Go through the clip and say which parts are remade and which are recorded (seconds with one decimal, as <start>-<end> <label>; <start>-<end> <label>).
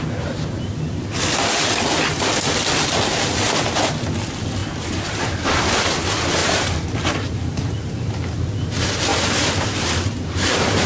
0.0-4.6 recorded; 4.6-5.3 remade; 5.3-6.4 recorded; 6.4-7.9 remade; 7.9-9.1 recorded; 9.1-10.9 remade